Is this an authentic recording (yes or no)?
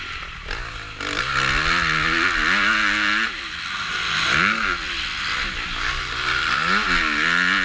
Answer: yes